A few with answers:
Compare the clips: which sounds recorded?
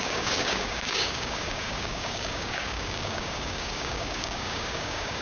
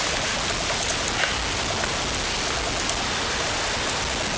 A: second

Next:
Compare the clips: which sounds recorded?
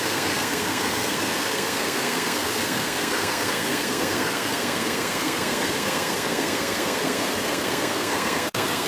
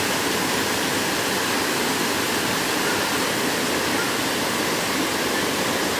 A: second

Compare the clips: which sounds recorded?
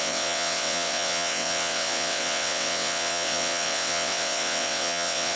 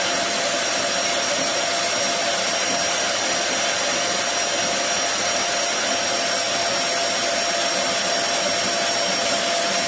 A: second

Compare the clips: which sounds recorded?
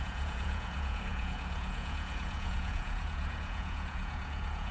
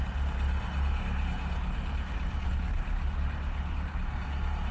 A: second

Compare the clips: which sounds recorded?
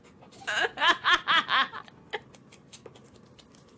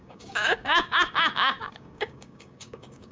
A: first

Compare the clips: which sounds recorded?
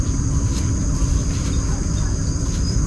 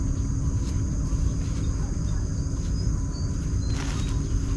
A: second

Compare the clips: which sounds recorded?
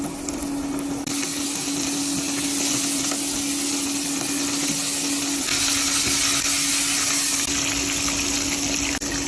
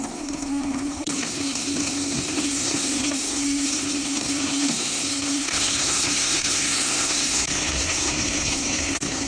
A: first